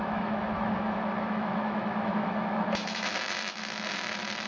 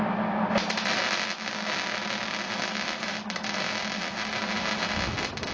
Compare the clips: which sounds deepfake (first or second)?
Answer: first